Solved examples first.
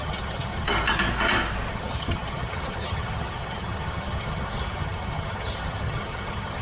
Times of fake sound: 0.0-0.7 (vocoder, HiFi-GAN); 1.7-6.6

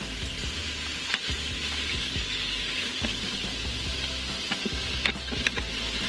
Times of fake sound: 1.9-3.3 (codec, DAC)

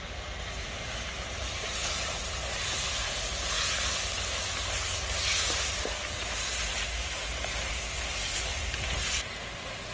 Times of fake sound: 0.0-3.3 (vocoder, BigVGAN v2); 6.2-8.5; 9.1-9.9